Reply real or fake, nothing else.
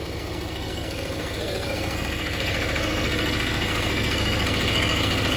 fake